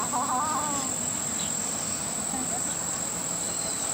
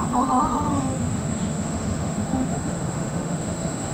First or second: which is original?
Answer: first